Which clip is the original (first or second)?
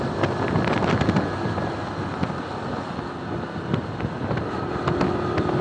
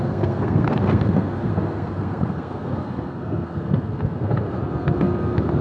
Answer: first